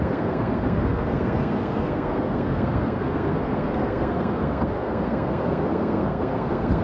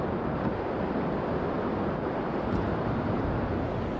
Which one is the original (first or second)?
second